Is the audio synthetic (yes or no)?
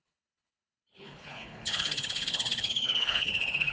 yes